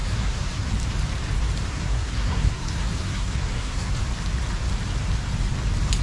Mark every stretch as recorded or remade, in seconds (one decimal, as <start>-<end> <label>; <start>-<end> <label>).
0.0-0.7 remade; 0.7-1.7 recorded; 1.7-3.9 remade; 3.9-6.0 recorded